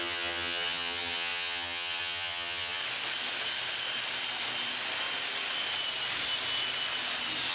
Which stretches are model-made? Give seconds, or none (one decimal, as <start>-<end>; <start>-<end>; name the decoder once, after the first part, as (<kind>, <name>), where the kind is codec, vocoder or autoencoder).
0.0-2.8 (vocoder, HiFi-GAN)

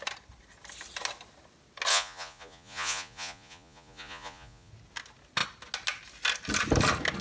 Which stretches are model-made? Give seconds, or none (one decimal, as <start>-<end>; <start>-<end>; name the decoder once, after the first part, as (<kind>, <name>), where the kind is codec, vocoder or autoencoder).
1.9-4.7 (vocoder, Vocos)